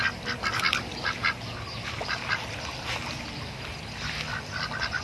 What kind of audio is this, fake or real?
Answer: real